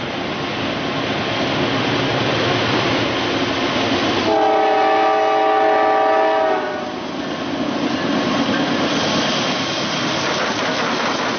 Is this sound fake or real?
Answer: real